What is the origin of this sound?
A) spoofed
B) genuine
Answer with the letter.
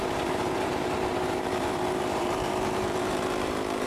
A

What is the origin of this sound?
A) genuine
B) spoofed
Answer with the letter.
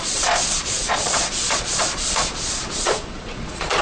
B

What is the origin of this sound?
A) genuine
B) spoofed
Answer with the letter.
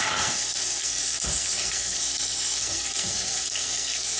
B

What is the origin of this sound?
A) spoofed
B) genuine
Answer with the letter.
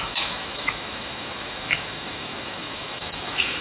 A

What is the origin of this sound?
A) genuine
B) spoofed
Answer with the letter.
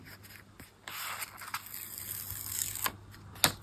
A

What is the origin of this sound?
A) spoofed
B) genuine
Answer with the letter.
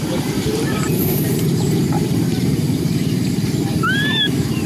A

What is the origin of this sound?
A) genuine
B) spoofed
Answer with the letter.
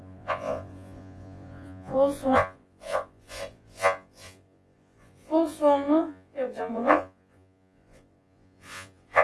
B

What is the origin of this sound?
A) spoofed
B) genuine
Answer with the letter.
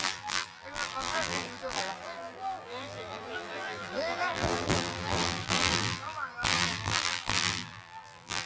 A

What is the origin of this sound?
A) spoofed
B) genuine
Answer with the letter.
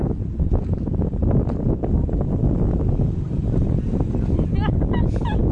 B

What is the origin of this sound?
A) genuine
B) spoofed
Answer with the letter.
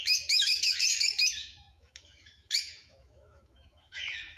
B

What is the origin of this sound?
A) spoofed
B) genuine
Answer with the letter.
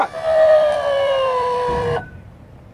A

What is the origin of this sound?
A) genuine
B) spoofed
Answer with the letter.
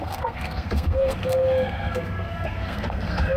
B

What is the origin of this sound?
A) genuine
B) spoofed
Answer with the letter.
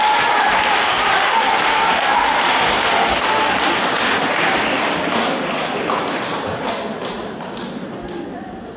A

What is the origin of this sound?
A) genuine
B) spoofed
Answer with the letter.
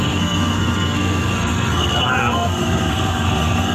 B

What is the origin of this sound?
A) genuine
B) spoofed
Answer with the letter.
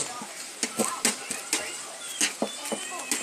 A